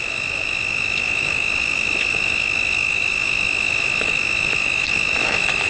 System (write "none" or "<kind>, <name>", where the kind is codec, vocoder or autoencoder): autoencoder, DAC-VAE